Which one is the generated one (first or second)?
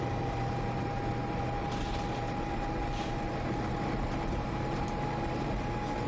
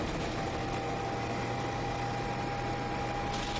first